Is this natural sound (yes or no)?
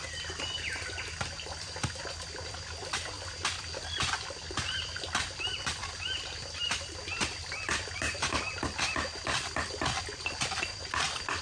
yes